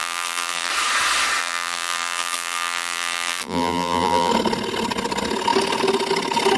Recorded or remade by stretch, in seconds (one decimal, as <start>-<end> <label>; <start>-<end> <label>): 0.0-0.7 remade; 0.7-1.4 recorded; 1.4-4.3 remade; 4.3-6.6 recorded